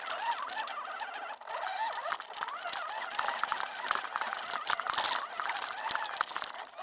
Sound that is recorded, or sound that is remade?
recorded